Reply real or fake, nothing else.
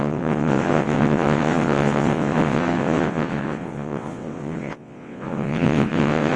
fake